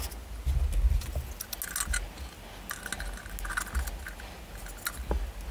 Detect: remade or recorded recorded